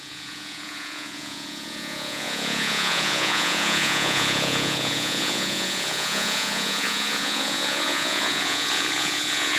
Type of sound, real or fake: fake